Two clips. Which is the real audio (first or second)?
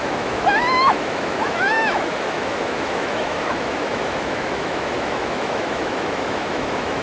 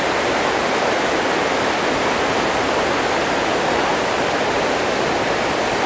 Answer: second